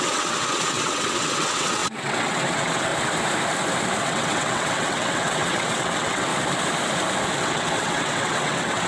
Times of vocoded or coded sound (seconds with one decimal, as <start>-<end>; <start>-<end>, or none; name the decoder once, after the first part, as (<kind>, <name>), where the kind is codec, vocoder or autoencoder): 0.0-2.9 (vocoder, WaveNeXt); 4.0-6.3; 7.4-8.9